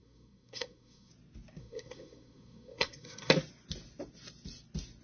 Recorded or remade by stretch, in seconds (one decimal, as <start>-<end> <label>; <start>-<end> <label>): 0.0-1.1 remade; 1.1-1.6 recorded; 1.6-3.3 remade; 3.3-5.0 recorded

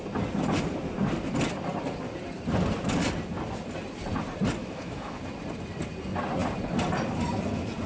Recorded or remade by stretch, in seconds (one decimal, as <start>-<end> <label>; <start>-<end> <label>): 0.0-4.6 recorded; 4.6-5.2 remade; 5.2-7.9 recorded

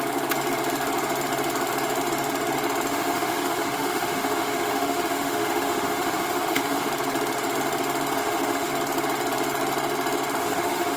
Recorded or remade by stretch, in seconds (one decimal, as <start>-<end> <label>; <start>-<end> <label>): 0.0-2.9 recorded; 2.9-6.9 remade; 6.9-8.2 recorded; 8.2-8.7 remade; 8.7-10.4 recorded; 10.4-11.0 remade

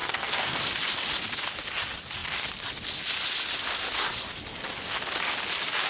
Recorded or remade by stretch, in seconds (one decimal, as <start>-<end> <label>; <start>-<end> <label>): 0.0-0.6 remade; 0.6-5.9 recorded

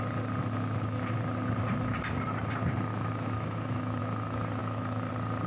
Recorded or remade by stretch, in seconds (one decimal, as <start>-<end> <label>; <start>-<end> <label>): 0.0-2.9 recorded; 2.9-4.0 remade; 4.0-4.6 recorded; 4.6-5.1 remade; 5.1-5.5 recorded

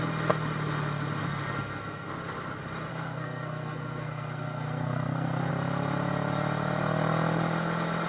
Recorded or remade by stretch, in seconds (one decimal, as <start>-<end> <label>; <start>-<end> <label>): 0.0-1.2 recorded; 1.2-2.1 remade; 2.1-2.9 recorded; 2.9-5.5 remade; 5.5-8.1 recorded